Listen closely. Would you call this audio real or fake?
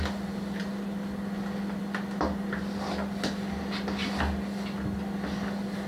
real